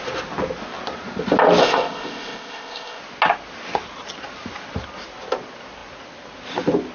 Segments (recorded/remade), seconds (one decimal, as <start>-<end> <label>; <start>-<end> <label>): 0.0-1.6 recorded; 1.6-3.0 remade; 3.0-6.9 recorded